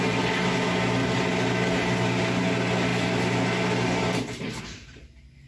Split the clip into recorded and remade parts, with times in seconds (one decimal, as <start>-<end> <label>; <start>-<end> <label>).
0.0-5.5 recorded